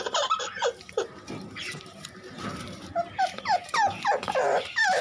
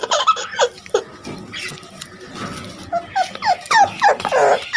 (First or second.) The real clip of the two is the second